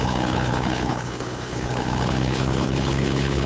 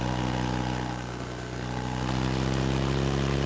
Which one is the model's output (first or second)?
first